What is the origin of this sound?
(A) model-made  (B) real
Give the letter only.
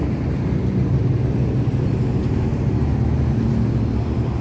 B